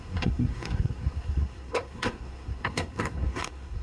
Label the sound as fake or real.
fake